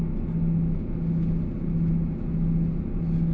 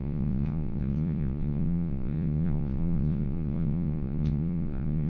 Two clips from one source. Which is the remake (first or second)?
second